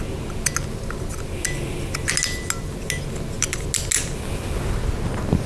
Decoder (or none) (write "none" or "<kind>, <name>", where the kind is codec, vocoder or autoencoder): none